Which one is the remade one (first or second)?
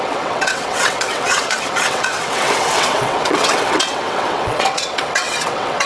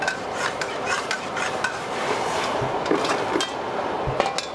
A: first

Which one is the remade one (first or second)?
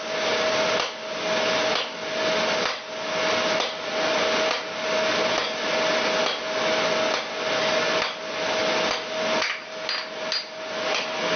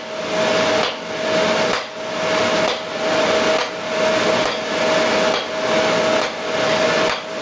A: second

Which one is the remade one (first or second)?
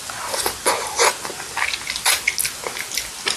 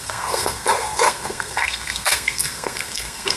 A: second